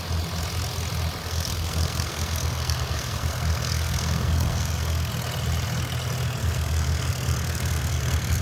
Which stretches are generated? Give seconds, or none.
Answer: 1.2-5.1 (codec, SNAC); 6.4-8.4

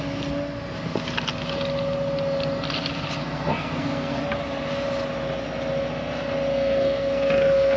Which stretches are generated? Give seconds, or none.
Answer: 3.2-4.2 (codec, SNAC); 6.5-7.8

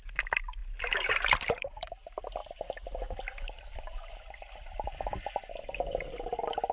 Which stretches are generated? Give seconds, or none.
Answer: 0.6-2.0 (vocoder, BigVGAN v2)